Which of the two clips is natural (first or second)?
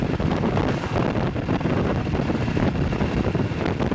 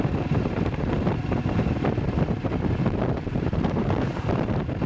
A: first